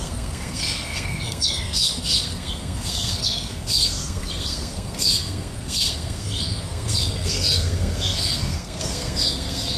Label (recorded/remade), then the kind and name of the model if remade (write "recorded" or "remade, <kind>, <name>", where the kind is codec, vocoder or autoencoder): remade, codec, SNAC